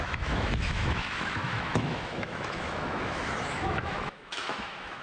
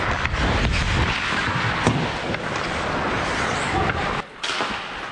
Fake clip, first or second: first